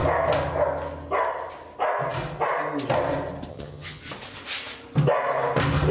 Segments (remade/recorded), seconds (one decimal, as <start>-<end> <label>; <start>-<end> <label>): 0.0-3.5 recorded; 3.5-4.0 remade; 4.0-5.9 recorded